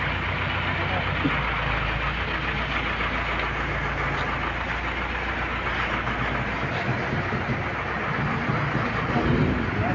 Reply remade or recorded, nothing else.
recorded